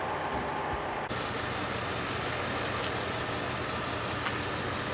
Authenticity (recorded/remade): recorded